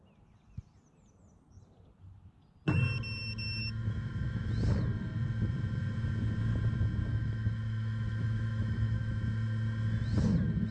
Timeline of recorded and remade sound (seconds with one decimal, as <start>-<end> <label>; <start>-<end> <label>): 0.0-3.6 recorded; 3.6-4.5 remade; 4.5-7.1 recorded; 7.1-9.2 remade; 9.2-10.7 recorded